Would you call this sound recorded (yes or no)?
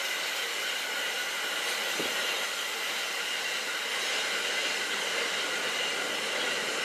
yes